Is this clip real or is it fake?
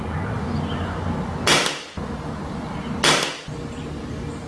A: real